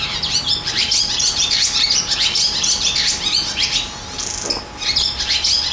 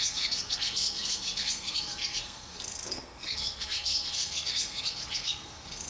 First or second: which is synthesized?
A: second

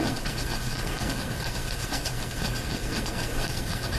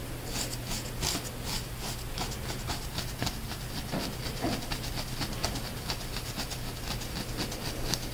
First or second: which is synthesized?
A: first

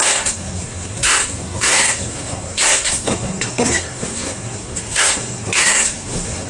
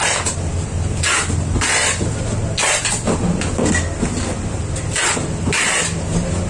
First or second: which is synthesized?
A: first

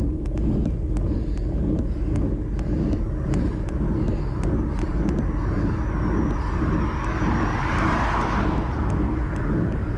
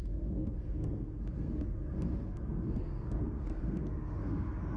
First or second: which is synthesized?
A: second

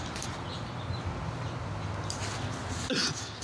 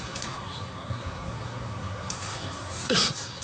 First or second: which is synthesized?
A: second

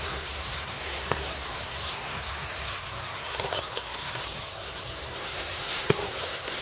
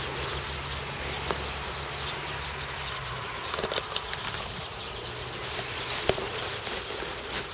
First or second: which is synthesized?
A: first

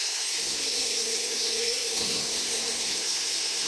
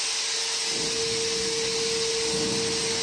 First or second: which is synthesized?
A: first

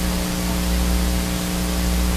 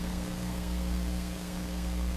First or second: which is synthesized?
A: second